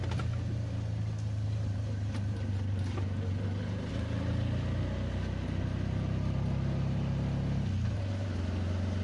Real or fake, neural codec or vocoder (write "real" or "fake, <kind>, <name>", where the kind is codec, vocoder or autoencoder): real